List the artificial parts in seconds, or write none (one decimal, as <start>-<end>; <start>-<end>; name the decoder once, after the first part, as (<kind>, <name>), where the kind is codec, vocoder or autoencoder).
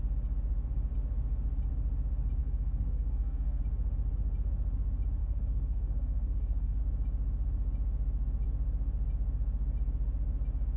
2.4-3.6 (codec, SNAC); 5.2-6.8